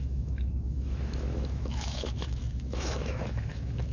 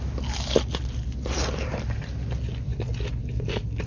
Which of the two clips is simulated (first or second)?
first